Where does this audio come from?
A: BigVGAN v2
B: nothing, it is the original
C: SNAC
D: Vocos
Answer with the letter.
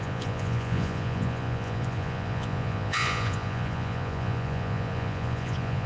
D